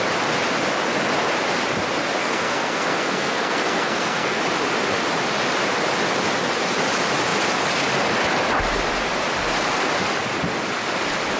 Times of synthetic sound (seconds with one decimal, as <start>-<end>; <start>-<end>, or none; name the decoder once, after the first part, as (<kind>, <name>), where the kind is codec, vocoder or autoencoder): 2.2-4.4 (codec, SNAC)